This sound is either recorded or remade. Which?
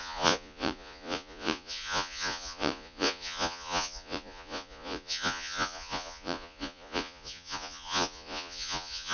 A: remade